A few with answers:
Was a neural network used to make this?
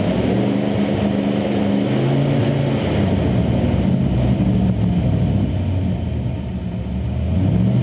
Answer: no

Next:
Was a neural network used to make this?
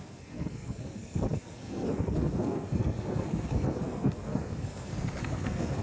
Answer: yes